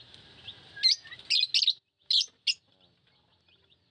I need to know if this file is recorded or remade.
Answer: recorded